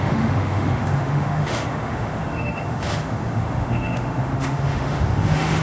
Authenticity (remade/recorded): remade